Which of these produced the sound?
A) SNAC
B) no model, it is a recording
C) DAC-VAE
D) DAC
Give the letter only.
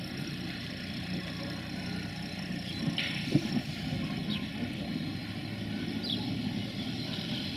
B